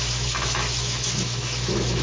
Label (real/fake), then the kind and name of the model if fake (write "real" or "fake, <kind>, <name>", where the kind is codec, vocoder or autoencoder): fake, autoencoder, DAC-VAE